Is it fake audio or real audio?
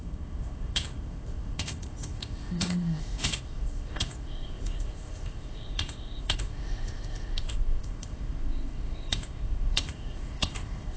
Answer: fake